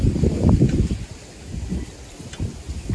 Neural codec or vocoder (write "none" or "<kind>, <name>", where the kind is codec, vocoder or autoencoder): none